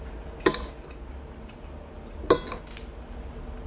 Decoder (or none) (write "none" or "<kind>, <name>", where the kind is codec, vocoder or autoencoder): none